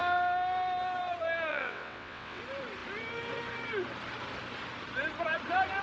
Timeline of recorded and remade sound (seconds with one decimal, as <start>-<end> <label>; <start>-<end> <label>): 0.0-1.5 recorded; 1.5-2.4 remade; 2.4-5.8 recorded